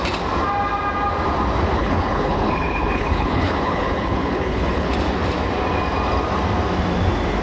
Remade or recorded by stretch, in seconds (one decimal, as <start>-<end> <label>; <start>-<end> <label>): 0.0-1.8 recorded; 1.8-4.9 remade; 4.9-7.4 recorded